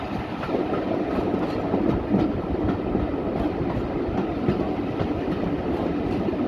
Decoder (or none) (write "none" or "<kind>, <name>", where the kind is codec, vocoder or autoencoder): none